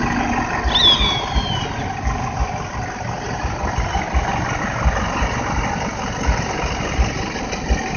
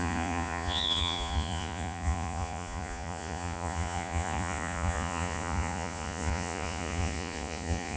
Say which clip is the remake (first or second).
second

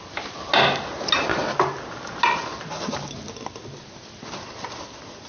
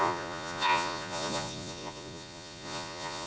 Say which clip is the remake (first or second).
second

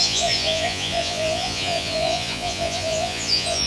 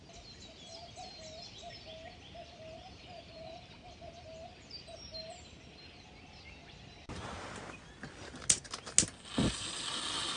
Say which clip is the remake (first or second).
first